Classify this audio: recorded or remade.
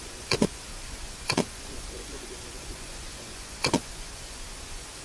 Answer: remade